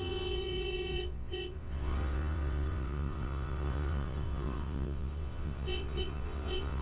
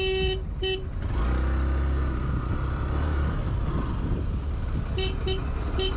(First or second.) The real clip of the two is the second